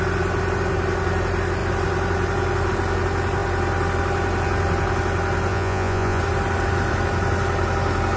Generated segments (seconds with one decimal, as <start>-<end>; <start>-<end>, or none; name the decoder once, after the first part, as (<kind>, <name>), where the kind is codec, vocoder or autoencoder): 5.5-6.2 (vocoder, Vocos)